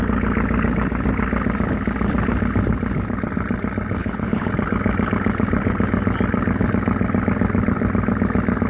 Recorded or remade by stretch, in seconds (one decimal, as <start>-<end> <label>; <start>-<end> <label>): 0.0-4.0 recorded; 4.0-4.5 remade; 4.5-8.7 recorded